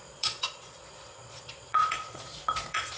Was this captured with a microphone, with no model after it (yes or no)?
no